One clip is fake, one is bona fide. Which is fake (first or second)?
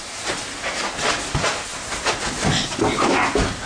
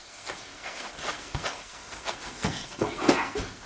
second